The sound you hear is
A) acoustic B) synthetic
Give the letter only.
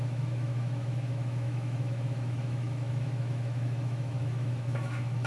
B